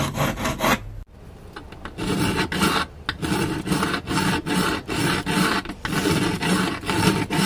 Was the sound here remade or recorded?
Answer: recorded